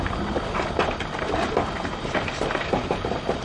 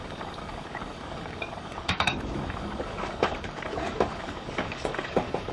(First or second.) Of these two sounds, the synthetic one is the second